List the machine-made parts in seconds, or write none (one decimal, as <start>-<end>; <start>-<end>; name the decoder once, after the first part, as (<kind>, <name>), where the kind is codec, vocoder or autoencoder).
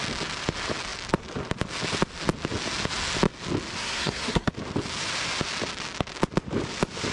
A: 3.8-4.5 (codec, SNAC)